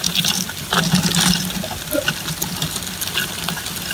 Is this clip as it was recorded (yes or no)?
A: yes